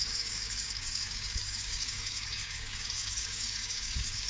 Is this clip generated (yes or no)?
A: yes